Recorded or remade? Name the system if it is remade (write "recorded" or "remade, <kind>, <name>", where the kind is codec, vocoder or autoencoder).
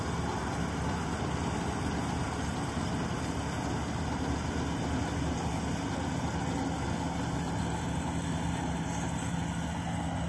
recorded